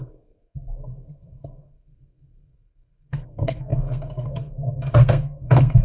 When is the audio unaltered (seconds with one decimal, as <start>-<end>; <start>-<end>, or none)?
none